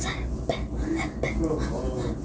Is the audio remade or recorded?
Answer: recorded